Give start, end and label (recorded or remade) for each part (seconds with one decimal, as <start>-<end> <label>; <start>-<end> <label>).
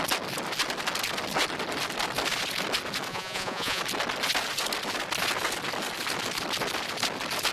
0.0-3.1 recorded; 3.1-3.8 remade; 3.8-7.5 recorded